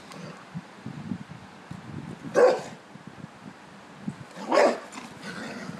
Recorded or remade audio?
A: recorded